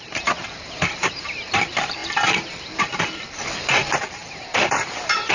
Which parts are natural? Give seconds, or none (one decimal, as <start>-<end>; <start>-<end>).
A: none